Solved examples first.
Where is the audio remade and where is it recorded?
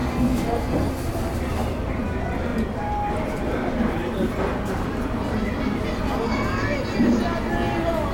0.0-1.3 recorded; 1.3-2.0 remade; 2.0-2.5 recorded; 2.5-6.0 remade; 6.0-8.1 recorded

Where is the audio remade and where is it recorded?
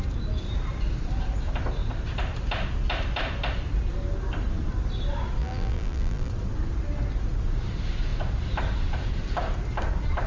0.0-5.4 recorded; 5.4-6.3 remade; 6.3-10.3 recorded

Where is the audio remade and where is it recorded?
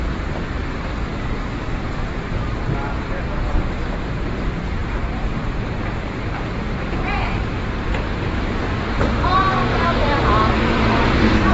0.0-4.8 remade; 4.8-7.1 recorded; 7.1-11.5 remade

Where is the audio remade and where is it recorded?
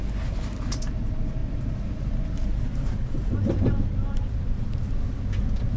0.0-1.4 recorded; 1.4-4.9 remade; 4.9-5.8 recorded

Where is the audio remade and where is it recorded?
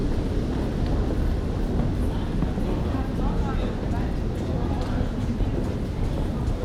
0.0-6.6 recorded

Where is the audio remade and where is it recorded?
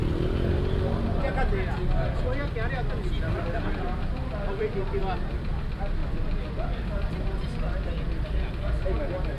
0.0-0.9 remade; 0.9-6.0 recorded; 6.0-7.1 remade; 7.1-9.4 recorded